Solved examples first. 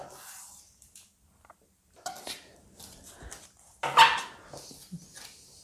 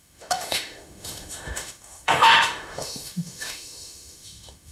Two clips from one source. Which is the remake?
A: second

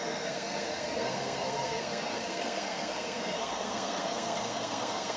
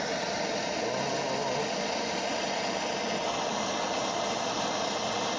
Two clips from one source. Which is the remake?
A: first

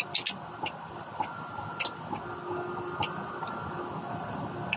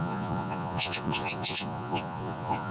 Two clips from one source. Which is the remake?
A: second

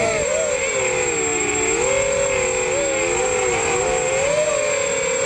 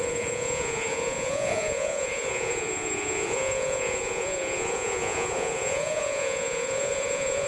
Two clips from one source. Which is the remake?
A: second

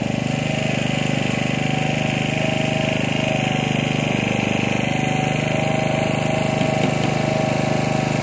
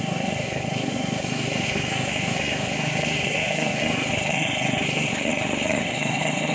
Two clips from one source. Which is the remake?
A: second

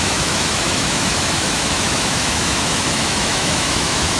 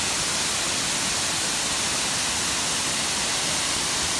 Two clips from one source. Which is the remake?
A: first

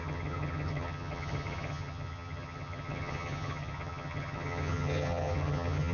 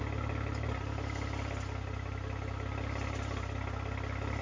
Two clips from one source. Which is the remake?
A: first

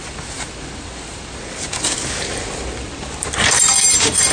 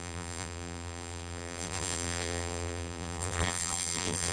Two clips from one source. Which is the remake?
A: second